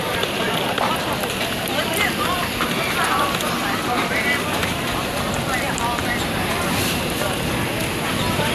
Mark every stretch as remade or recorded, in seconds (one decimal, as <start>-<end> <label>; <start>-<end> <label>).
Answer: 0.0-5.0 recorded; 5.0-7.5 remade; 7.5-8.5 recorded